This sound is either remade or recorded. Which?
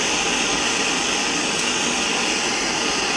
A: recorded